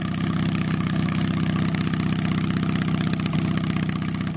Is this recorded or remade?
recorded